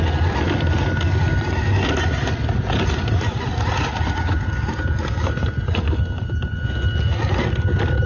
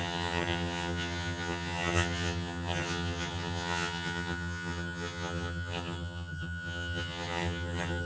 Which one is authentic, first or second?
first